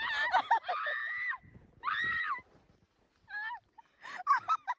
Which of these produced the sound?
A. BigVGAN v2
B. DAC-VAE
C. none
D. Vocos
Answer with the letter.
C